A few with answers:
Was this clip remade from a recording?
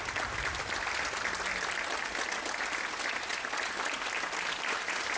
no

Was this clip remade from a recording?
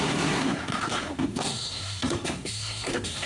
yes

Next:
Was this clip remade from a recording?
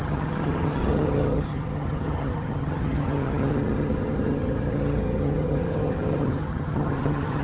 yes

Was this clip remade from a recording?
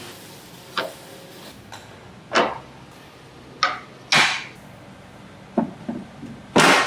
no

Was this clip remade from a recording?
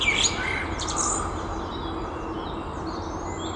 no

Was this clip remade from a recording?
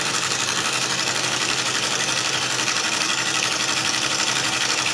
yes